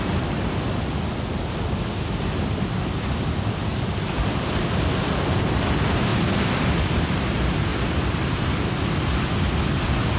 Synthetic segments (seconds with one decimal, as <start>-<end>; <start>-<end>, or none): 3.7-4.2; 7.7-8.7